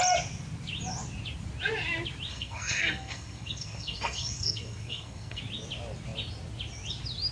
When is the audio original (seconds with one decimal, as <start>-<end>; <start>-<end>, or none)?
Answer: 0.0-2.3; 5.4-7.3